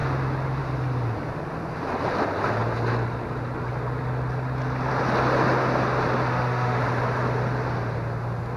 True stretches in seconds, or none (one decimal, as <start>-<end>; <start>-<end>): 0.0-6.3; 6.8-8.6